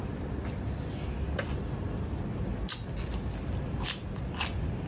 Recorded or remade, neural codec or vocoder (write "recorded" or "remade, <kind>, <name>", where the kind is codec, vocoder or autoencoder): recorded